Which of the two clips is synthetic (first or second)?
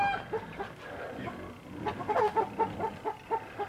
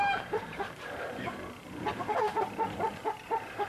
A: second